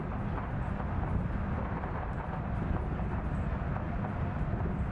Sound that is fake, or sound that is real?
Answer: real